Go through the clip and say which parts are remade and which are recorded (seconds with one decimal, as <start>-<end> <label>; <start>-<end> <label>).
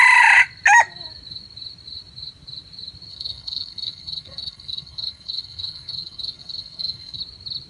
0.0-3.1 recorded; 3.1-7.2 remade; 7.2-7.7 recorded